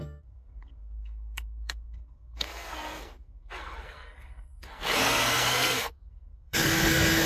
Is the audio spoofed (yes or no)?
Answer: yes